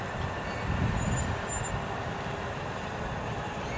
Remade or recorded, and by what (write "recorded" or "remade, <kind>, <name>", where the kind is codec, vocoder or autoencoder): recorded